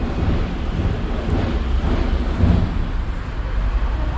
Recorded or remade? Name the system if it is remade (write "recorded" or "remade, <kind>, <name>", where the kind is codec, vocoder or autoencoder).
recorded